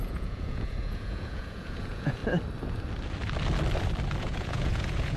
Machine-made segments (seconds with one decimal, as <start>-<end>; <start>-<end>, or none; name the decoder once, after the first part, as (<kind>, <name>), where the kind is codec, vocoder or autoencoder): 0.0-2.2 (vocoder, Vocos); 4.2-5.2